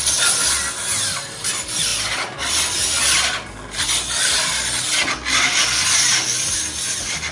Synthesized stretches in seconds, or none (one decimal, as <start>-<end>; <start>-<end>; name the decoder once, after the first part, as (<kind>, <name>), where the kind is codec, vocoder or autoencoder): none